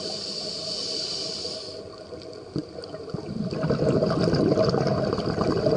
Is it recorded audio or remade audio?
recorded